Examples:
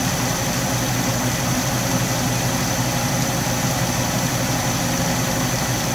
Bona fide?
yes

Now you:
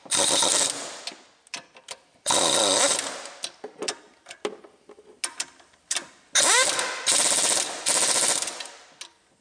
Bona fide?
yes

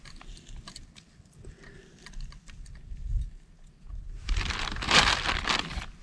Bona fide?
yes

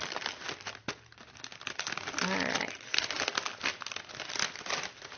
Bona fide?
yes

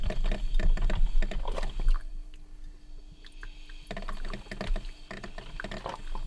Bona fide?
yes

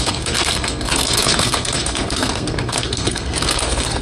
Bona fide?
no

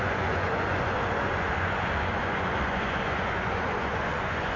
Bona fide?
no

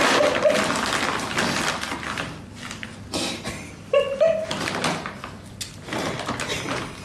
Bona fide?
yes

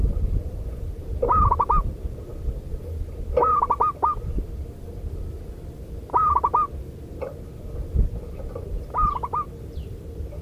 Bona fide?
yes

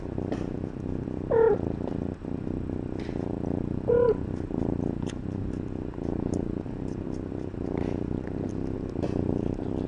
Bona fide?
yes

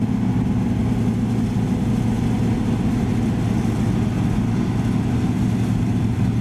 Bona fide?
yes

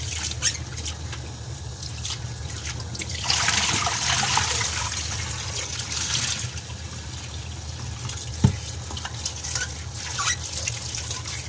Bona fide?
yes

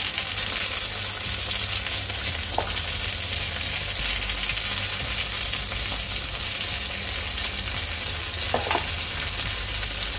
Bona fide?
yes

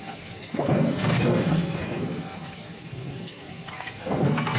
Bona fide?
no